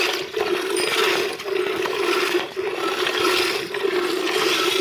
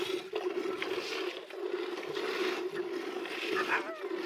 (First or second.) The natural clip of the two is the second